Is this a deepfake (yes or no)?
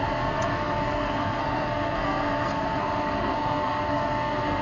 yes